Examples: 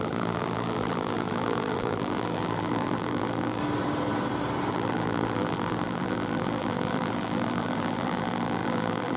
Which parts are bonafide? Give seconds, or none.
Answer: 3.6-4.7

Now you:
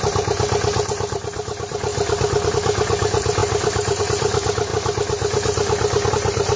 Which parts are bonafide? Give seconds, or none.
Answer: 4.7-6.1

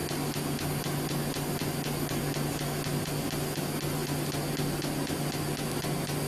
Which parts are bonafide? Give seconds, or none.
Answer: 0.0-6.3

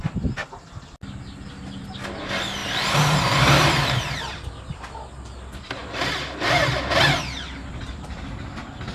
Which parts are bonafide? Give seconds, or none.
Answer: 0.0-2.6; 4.3-5.8; 8.2-8.9

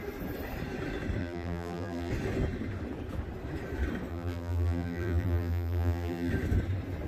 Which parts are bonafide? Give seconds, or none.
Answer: 0.0-1.2; 2.1-4.1; 6.3-7.1